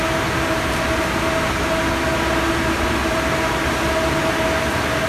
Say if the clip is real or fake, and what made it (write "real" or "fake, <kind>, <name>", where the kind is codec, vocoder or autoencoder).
real